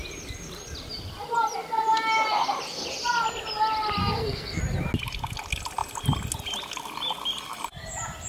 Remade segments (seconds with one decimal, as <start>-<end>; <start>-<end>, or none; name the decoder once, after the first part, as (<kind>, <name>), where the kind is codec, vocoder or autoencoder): 4.0-4.6 (codec, SNAC)

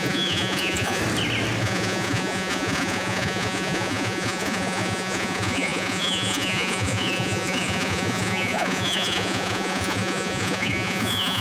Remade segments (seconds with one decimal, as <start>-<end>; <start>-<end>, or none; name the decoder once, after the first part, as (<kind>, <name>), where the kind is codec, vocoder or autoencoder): 0.0-1.0 (vocoder, Vocos); 1.6-11.4

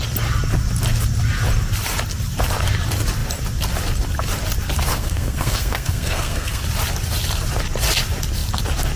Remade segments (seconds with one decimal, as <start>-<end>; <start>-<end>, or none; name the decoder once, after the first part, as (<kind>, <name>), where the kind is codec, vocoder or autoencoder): 4.9-6.6 (codec, SNAC)

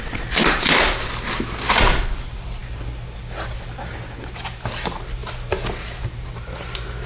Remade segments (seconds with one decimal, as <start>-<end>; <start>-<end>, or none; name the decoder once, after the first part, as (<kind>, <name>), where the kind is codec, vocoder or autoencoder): none

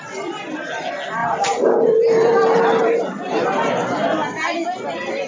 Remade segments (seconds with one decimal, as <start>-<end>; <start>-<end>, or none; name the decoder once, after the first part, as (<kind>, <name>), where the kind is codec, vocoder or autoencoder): 1.2-3.4 (vocoder, BigVGAN v2)

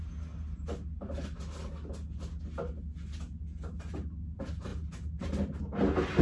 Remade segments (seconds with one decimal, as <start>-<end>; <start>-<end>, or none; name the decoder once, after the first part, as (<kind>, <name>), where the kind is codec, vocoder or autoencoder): none

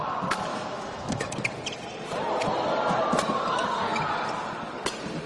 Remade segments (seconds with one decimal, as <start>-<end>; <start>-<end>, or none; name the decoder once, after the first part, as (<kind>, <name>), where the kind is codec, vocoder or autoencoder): 0.5-1.4 (autoencoder, DAC-VAE)